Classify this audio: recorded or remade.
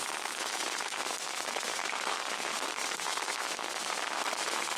remade